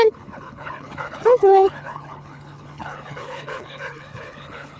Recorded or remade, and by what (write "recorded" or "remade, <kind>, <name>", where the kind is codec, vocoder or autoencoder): remade, codec, HILCodec